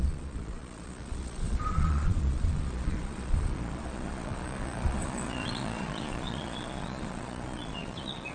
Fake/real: fake